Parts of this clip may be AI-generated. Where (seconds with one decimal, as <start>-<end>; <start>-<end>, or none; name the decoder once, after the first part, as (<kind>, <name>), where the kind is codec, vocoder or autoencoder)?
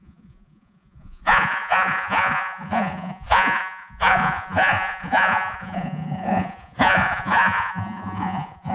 0.0-8.7 (vocoder, Vocos)